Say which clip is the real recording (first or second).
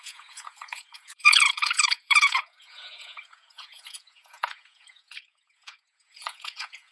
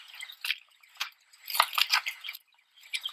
second